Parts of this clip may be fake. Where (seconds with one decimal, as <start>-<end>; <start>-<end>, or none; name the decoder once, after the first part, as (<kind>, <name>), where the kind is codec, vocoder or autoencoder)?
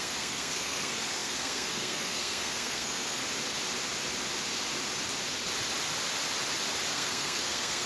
0.0-3.2 (codec, SNAC); 6.9-7.9